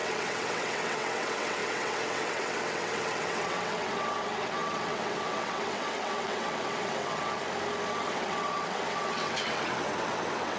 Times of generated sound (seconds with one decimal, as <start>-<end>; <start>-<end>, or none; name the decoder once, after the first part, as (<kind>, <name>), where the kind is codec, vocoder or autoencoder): 0.0-7.4 (vocoder, WaveNeXt); 7.9-10.6